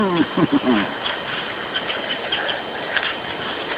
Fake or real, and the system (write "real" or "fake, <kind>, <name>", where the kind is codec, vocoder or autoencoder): real